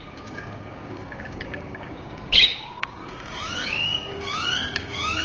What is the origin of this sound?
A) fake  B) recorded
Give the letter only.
A